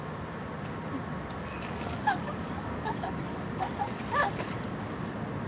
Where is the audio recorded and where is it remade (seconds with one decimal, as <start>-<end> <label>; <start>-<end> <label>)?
0.0-1.5 recorded; 1.5-4.0 remade; 4.0-5.5 recorded